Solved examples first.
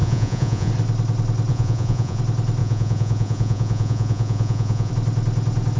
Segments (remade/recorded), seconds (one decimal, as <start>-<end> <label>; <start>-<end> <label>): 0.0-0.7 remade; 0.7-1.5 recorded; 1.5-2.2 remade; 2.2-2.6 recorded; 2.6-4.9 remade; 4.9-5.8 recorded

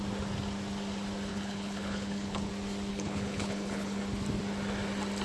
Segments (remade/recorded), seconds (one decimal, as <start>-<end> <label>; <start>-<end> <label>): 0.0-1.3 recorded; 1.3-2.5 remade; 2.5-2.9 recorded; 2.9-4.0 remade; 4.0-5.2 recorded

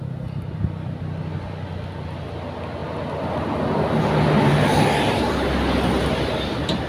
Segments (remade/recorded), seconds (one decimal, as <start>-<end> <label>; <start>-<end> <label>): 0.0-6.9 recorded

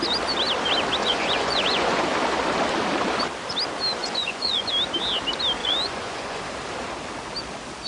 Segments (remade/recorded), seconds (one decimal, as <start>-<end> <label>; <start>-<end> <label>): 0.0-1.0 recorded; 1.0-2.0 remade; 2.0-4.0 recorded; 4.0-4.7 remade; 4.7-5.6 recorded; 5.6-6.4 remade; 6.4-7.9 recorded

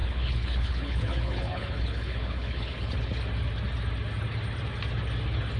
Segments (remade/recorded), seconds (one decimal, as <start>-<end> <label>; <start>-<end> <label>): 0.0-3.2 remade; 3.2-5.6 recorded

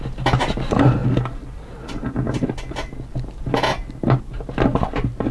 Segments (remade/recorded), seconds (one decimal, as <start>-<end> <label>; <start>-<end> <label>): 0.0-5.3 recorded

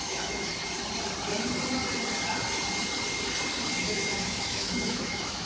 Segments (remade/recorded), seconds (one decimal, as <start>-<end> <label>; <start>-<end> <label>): 0.0-0.5 remade; 0.5-3.8 recorded; 3.8-5.5 remade

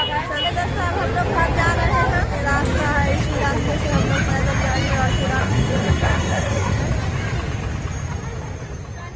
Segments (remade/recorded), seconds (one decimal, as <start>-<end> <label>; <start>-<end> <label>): 0.0-5.4 recorded; 5.4-6.8 remade; 6.8-9.2 recorded